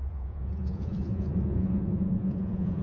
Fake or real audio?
fake